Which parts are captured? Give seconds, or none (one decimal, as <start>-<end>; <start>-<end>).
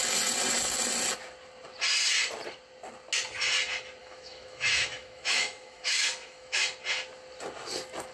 0.0-4.0; 6.6-8.1